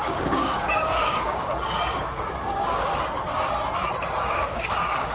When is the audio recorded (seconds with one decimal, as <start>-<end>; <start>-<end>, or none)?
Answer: 2.9-4.3